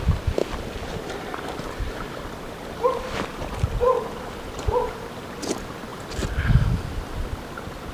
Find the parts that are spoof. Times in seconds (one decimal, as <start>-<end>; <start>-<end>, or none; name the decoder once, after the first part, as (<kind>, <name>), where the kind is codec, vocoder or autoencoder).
0.4-4.9 (vocoder, BigVGAN v2)